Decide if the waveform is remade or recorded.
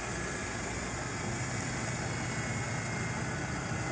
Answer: recorded